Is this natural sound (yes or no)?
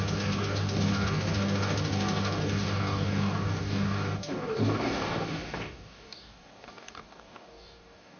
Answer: no